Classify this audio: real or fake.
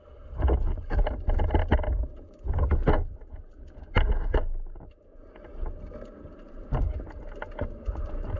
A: real